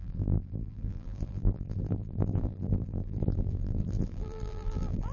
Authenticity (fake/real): fake